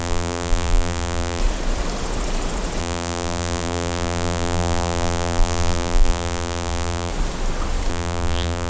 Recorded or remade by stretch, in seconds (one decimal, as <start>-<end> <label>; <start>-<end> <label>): 0.0-1.4 remade; 1.4-2.8 recorded; 2.8-7.1 remade; 7.1-7.9 recorded; 7.9-8.7 remade